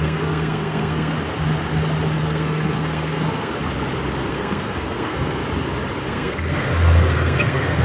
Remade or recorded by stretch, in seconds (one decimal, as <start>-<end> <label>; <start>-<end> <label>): 0.0-1.1 remade; 1.1-2.2 recorded; 2.2-3.5 remade; 3.5-4.3 recorded; 4.3-5.4 remade; 5.4-6.0 recorded; 6.0-7.8 remade